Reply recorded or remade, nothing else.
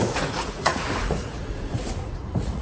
remade